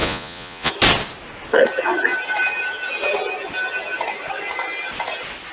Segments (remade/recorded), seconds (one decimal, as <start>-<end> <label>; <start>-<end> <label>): 0.0-0.7 remade; 0.7-5.5 recorded